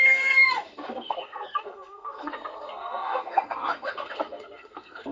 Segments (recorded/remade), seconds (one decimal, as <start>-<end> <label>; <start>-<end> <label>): 0.0-5.1 remade